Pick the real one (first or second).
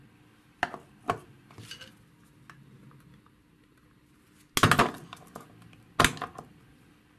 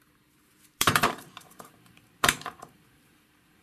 first